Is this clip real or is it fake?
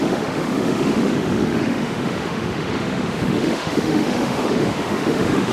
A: fake